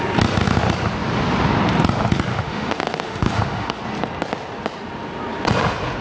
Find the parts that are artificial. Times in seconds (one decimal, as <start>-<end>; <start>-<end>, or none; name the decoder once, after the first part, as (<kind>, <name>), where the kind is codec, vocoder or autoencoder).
2.3-3.8 (autoencoder, DAC-VAE)